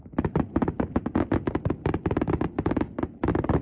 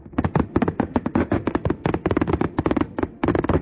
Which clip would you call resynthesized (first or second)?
second